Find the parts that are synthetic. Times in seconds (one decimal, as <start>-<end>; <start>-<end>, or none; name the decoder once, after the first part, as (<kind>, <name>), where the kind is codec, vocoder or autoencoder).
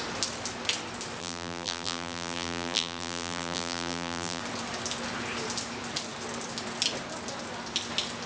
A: 1.2-4.4 (vocoder, BigVGAN v2)